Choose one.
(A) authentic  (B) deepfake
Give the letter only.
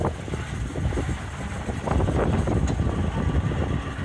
A